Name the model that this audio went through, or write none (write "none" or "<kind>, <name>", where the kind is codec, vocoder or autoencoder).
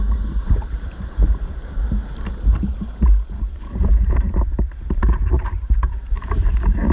vocoder, BigVGAN v2